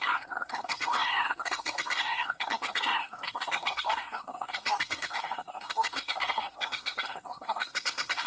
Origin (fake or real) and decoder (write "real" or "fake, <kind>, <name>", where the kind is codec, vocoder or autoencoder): fake, codec, SNAC